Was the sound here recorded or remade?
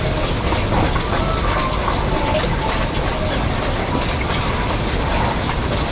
recorded